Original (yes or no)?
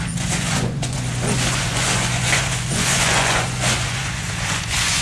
no